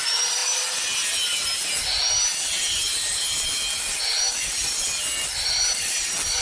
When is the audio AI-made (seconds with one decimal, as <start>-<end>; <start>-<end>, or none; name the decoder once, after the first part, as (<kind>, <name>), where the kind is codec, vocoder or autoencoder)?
none